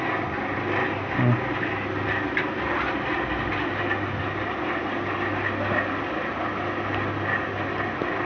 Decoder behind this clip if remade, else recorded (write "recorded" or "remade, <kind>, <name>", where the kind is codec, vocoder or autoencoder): recorded